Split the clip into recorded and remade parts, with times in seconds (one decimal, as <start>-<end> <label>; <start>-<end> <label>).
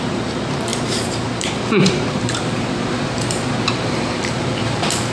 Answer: 0.0-5.1 remade